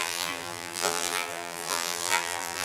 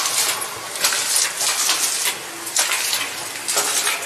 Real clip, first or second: second